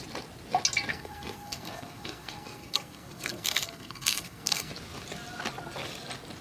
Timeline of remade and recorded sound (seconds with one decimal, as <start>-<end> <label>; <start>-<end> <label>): 0.0-0.9 recorded; 0.9-4.7 remade; 4.7-6.4 recorded